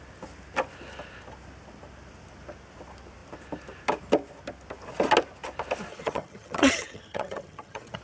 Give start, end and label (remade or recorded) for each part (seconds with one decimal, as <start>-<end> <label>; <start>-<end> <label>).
0.0-5.9 recorded; 5.9-8.0 remade